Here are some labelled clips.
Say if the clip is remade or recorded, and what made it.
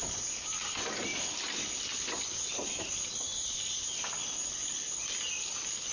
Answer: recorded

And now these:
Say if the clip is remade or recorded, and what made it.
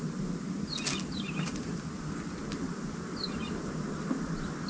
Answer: recorded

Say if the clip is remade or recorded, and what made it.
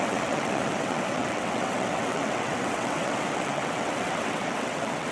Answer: remade, vocoder, WaveNeXt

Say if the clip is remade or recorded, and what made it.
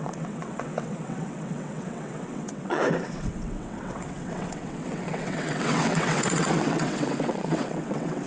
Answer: remade, vocoder, WaveNeXt